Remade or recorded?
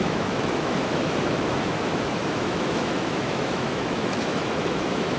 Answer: remade